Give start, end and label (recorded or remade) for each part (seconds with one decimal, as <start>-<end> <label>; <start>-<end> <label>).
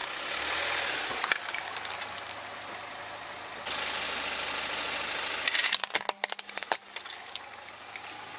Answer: 0.0-8.4 recorded